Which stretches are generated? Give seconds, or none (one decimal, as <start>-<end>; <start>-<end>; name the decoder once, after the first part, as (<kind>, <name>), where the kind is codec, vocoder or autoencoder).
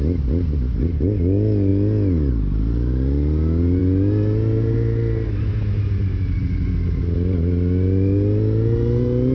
none